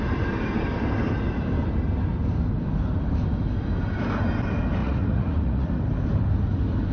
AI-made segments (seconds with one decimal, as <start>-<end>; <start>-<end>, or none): 4.8-5.7